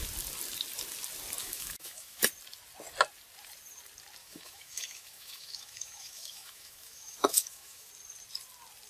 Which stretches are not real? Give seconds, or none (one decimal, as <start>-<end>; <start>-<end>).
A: 1.4-2.2; 4.2-7.9